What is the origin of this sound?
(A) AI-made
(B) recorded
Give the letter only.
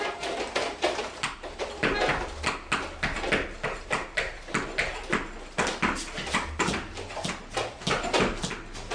B